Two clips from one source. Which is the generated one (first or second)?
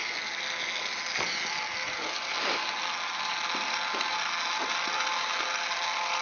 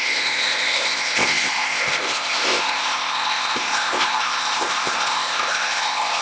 second